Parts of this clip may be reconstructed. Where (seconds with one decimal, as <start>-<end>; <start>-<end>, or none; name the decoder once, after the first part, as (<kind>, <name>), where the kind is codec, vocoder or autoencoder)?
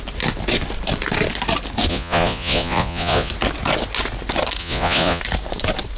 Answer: 1.9-3.3 (vocoder, Vocos); 4.6-5.2